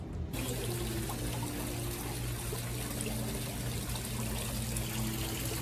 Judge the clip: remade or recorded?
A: recorded